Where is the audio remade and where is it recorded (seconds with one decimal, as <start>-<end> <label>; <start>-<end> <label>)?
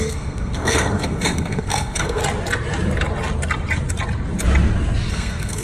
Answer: 0.0-2.2 remade; 2.2-5.1 recorded; 5.1-5.6 remade